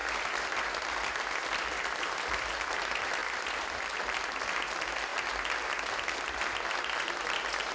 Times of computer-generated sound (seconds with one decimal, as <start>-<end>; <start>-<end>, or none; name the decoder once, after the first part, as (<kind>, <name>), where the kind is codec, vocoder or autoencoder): 3.2-4.0 (vocoder, BigVGAN v2)